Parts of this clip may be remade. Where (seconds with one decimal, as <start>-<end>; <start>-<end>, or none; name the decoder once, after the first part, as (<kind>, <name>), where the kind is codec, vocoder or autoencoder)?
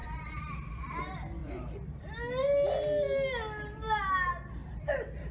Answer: 0.0-0.8 (vocoder, BigVGAN v2); 1.4-2.0; 4.6-5.3